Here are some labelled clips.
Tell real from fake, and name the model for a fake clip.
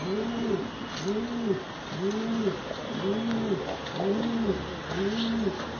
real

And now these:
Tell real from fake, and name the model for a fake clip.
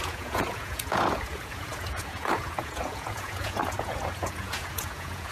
fake, vocoder, Vocos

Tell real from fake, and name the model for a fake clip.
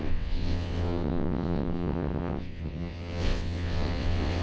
fake, vocoder, WaveNeXt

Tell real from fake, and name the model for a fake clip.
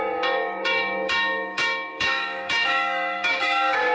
fake, codec, DAC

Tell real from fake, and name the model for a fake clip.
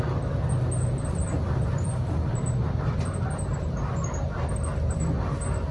real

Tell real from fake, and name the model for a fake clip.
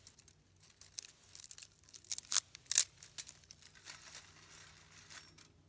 real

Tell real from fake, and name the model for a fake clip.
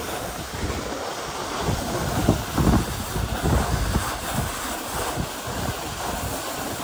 real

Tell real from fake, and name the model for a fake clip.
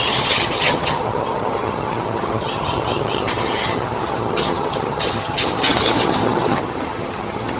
fake, vocoder, HiFi-GAN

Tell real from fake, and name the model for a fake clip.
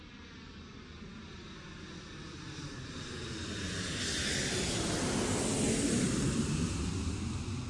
real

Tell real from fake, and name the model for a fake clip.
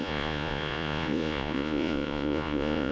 fake, vocoder, Vocos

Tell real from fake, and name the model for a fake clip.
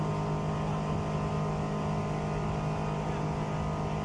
real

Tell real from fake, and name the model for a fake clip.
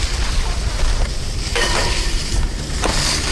real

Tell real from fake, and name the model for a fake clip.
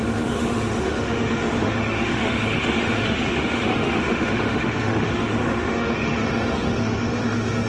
fake, autoencoder, DAC-VAE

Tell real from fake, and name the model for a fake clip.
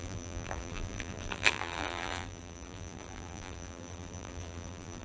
fake, vocoder, BigVGAN v2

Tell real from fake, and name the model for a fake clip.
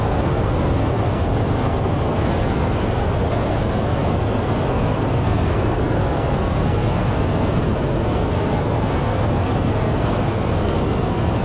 fake, codec, SNAC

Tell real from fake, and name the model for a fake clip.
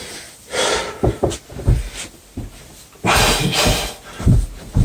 real